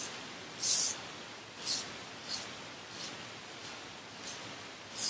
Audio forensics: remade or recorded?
recorded